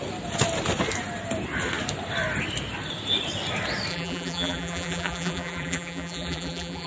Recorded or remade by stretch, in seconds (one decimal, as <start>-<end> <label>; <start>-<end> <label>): 0.0-3.9 recorded; 3.9-6.9 remade